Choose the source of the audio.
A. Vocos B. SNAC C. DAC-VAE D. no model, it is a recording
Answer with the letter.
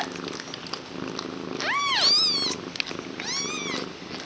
D